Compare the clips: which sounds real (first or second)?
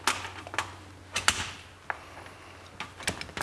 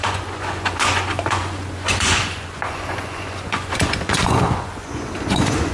first